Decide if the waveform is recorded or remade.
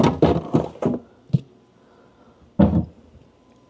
recorded